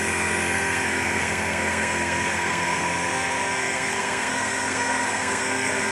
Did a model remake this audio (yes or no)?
yes